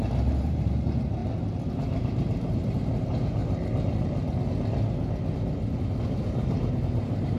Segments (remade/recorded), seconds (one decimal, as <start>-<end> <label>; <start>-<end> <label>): 0.0-1.2 remade; 1.2-1.7 recorded; 1.7-3.4 remade; 3.4-6.0 recorded; 6.0-7.4 remade